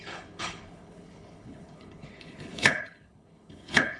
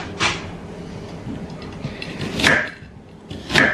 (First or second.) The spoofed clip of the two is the first